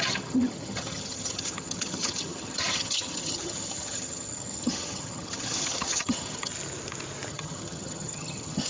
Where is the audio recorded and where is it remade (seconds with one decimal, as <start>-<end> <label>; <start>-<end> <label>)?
0.0-6.5 remade; 6.5-7.3 recorded; 7.3-8.7 remade